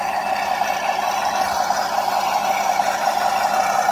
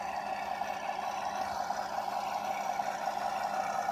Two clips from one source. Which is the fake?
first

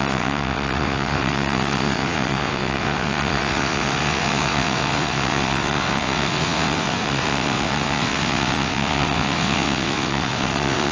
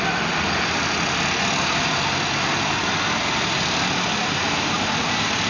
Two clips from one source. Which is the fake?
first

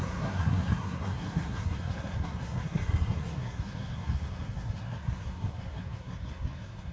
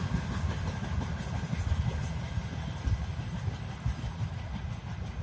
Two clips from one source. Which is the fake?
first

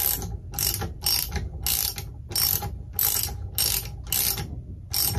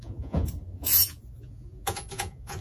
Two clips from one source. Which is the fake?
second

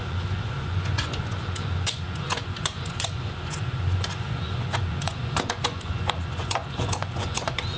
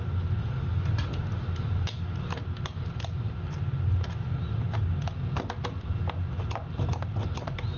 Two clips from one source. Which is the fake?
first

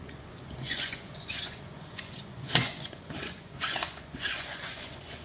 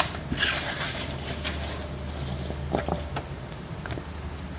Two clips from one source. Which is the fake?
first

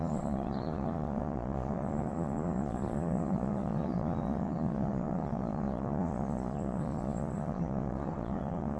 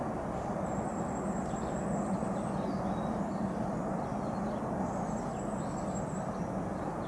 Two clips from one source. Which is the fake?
first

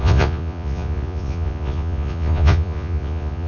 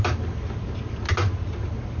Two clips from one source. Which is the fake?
first